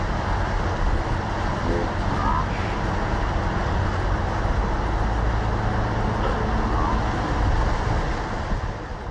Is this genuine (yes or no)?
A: yes